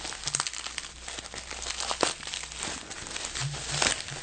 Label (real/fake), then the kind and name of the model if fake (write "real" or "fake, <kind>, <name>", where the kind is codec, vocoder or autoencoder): real